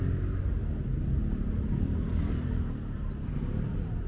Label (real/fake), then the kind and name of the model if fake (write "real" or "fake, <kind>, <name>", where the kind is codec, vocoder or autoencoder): real